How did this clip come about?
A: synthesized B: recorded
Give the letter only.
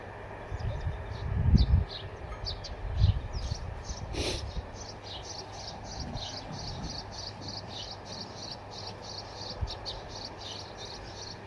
B